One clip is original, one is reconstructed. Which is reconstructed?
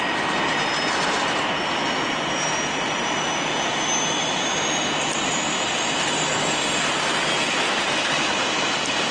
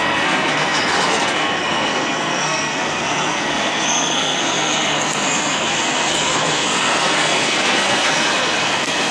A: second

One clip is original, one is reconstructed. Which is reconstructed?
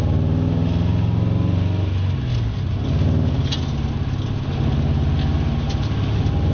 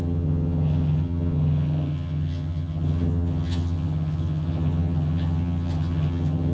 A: second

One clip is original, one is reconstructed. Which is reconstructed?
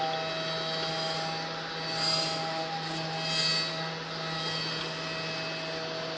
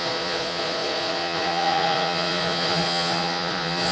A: second